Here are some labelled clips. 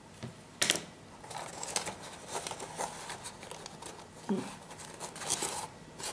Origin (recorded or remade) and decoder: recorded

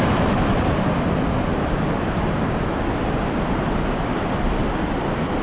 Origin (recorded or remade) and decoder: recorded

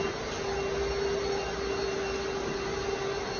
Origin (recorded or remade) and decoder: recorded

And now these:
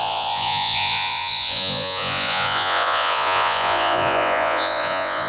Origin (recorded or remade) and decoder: remade, vocoder, Vocos